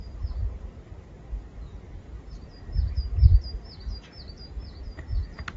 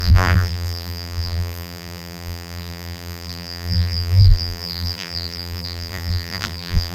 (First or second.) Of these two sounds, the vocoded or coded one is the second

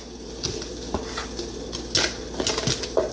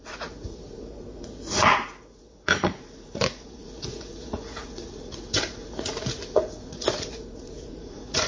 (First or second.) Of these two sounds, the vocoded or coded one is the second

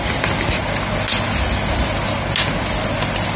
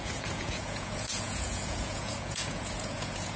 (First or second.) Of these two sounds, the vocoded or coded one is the second